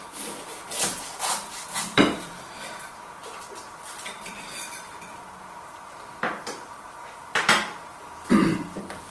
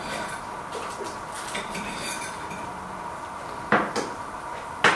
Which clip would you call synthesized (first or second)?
first